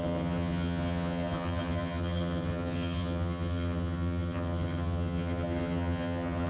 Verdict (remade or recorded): remade